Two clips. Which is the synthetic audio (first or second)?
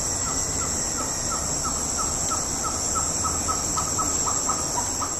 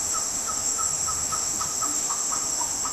second